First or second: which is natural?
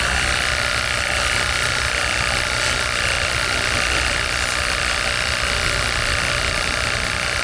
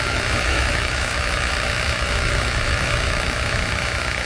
first